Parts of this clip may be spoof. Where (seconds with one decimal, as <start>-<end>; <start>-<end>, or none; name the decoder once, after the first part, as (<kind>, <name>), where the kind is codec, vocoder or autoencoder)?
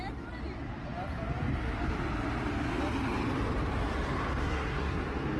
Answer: 4.4-5.0 (codec, SNAC)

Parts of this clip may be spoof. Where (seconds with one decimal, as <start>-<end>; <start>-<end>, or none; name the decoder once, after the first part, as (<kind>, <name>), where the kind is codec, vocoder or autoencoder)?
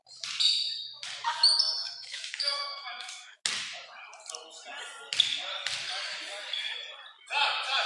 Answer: 1.8-3.4 (autoencoder, DAC-VAE)